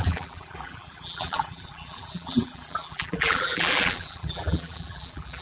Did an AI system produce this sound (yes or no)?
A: yes